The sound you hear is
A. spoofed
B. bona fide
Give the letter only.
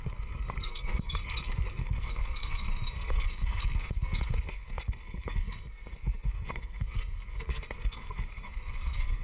A